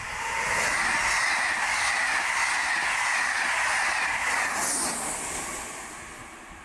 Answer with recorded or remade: recorded